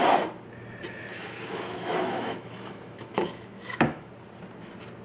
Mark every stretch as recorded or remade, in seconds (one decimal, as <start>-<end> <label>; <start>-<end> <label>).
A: 0.0-1.1 recorded; 1.1-4.1 remade; 4.1-5.0 recorded

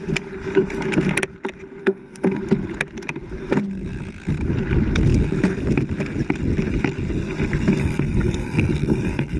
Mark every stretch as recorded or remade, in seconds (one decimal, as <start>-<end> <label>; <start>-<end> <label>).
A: 0.0-1.8 recorded; 1.8-2.4 remade; 2.4-7.8 recorded; 7.8-9.4 remade

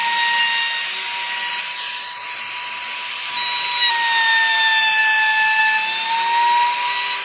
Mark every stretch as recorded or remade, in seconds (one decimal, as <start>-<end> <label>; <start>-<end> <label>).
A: 0.0-7.2 recorded

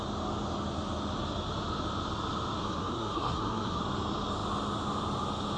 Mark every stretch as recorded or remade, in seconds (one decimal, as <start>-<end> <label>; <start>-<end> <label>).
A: 0.0-2.6 recorded; 2.6-3.8 remade; 3.8-5.6 recorded

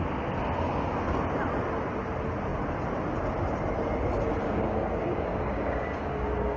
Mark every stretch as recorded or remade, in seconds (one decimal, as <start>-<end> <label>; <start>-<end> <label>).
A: 0.0-4.4 recorded; 4.4-6.6 remade

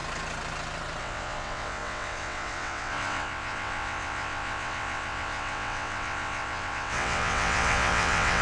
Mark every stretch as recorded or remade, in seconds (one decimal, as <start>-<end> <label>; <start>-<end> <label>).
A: 0.0-1.0 recorded; 1.0-8.4 remade